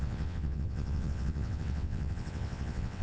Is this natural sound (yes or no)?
no